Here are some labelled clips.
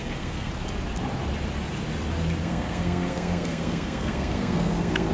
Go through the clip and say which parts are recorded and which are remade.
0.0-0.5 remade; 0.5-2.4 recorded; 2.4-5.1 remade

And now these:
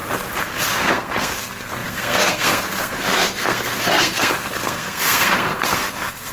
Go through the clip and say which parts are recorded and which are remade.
0.0-0.6 recorded; 0.6-6.3 remade